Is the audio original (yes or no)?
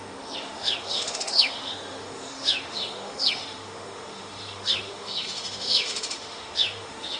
no